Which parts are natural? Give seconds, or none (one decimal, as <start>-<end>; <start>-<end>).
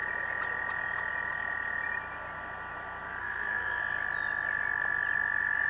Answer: 0.0-3.2; 3.8-5.7